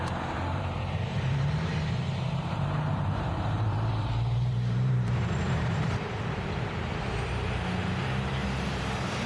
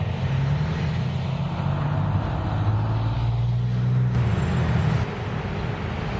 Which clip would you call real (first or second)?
second